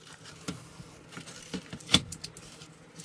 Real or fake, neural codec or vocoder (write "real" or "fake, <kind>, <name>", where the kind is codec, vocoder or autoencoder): real